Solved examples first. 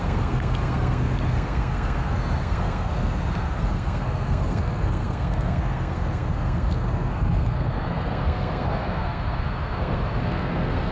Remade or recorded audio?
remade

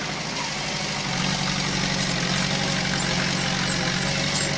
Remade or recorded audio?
recorded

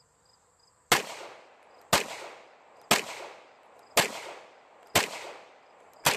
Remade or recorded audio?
recorded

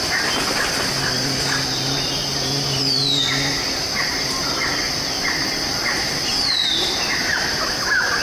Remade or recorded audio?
recorded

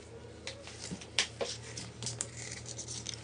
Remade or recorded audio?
recorded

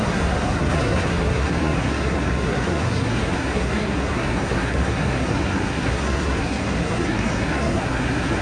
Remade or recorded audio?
remade